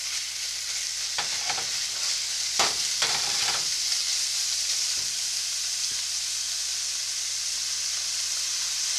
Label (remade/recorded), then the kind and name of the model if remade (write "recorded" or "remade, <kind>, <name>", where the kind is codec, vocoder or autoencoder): recorded